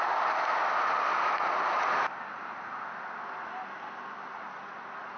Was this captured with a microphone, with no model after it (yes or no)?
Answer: yes